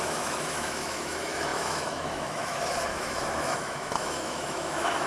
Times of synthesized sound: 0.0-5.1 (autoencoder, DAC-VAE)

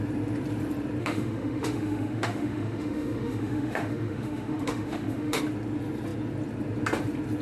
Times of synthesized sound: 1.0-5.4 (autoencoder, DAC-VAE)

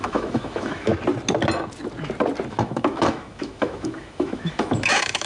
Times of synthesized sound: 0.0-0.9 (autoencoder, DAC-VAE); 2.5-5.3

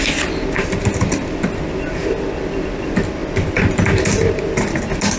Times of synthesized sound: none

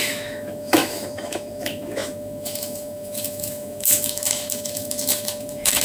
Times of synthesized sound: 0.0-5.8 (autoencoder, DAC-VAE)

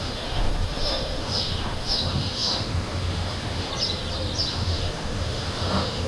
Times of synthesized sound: 0.0-3.7 (autoencoder, DAC-VAE); 4.5-6.1

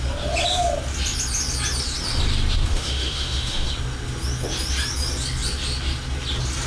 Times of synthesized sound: 2.7-3.7 (autoencoder, DAC-VAE)